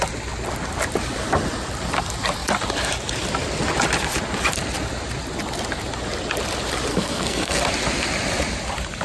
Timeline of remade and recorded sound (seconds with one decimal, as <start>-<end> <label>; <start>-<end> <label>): 0.0-6.9 recorded; 6.9-7.6 remade; 7.6-9.0 recorded